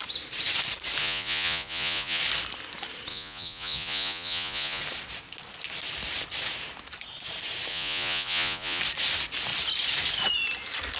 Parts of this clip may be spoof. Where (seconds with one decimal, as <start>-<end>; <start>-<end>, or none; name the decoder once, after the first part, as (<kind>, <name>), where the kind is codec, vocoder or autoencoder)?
1.0-2.2 (vocoder, Vocos); 3.1-4.8; 7.7-8.8